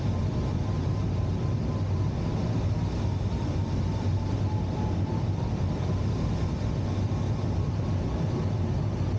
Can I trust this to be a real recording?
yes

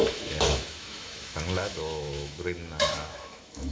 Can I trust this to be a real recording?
no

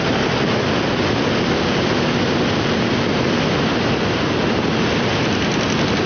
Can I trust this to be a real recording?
yes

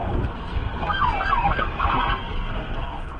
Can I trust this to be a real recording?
no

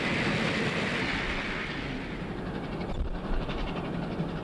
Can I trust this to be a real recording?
yes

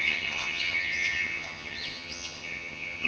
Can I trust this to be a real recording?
no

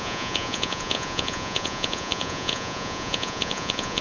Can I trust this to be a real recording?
no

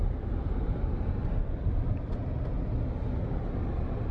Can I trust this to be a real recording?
yes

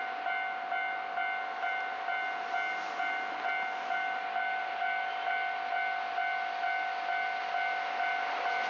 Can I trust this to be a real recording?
yes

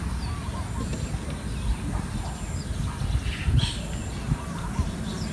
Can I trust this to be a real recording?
yes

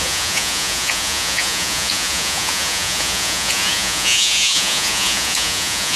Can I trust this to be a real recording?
no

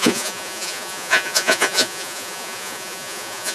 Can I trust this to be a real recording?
no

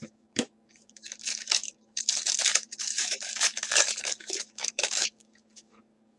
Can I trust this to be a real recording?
no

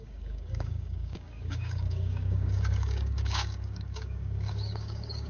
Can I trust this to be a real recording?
no